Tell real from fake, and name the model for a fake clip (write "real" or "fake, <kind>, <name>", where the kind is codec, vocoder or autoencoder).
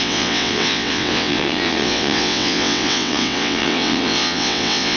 fake, vocoder, WaveNeXt